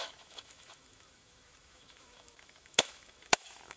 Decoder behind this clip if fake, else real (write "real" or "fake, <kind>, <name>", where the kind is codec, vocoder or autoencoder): fake, autoencoder, DAC-VAE